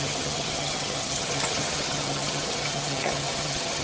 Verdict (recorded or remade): remade